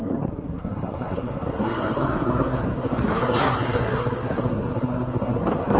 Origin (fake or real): fake